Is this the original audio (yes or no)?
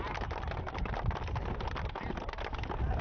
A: yes